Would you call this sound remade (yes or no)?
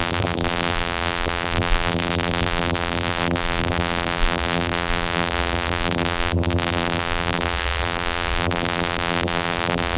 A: yes